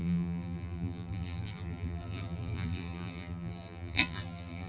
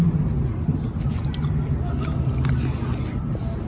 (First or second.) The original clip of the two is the second